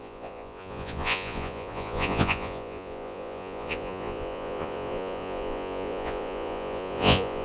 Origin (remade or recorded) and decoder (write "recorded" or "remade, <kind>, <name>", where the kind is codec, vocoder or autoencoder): remade, vocoder, Vocos